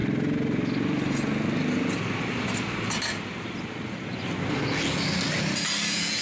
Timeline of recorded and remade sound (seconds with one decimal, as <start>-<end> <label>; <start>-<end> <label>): 0.0-6.2 recorded